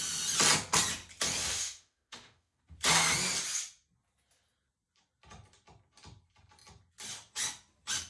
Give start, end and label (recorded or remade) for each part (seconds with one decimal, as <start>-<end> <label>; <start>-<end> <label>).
0.0-1.4 recorded; 1.4-2.6 remade; 2.6-8.1 recorded